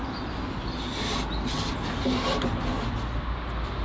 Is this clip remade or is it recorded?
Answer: recorded